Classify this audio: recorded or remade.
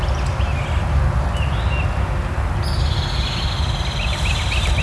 recorded